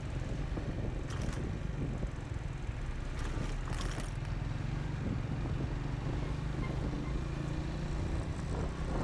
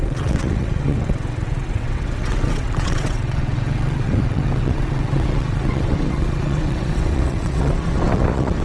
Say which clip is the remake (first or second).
second